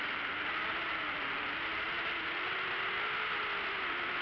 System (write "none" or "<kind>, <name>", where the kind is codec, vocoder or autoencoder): none